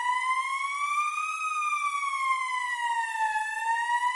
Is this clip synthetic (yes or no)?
no